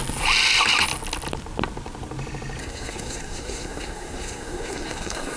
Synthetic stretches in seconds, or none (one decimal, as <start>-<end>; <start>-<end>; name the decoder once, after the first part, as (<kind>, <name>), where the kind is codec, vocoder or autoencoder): 2.6-5.4 (codec, SNAC)